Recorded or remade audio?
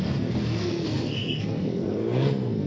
remade